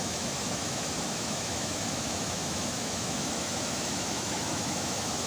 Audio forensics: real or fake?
fake